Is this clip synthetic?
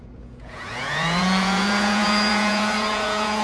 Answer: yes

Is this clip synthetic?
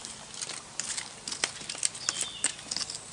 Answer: no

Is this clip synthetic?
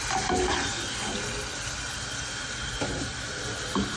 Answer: no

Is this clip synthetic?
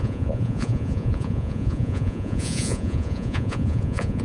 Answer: yes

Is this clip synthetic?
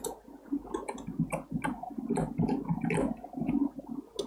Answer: no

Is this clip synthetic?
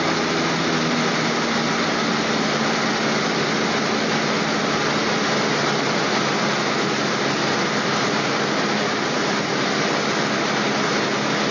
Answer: no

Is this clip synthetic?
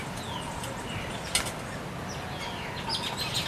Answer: no